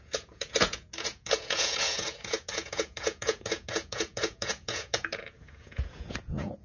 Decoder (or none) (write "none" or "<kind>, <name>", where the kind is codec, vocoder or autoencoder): vocoder, Vocos